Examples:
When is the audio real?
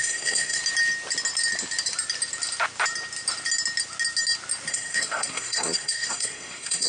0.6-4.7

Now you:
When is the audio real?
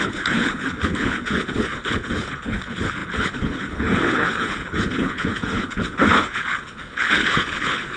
none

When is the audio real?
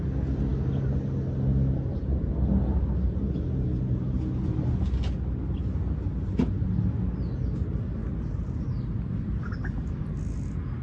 0.0-10.8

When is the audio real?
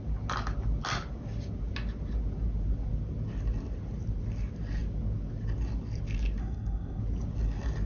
0.0-6.4; 7.0-7.9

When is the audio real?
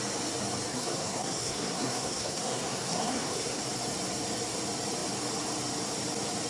0.0-0.7; 3.6-6.5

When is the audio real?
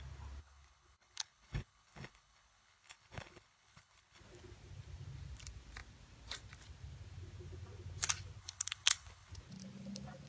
0.0-0.4; 4.2-8.4; 9.3-10.3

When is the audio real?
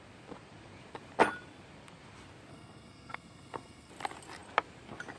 0.0-2.5; 3.9-5.2